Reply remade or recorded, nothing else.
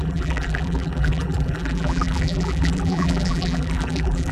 remade